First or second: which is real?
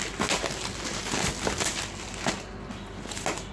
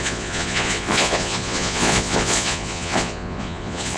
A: first